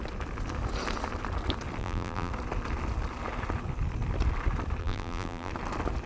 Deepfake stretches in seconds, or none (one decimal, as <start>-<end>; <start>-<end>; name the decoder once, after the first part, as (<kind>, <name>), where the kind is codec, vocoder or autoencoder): 1.8-2.3 (vocoder, BigVGAN v2); 4.8-5.5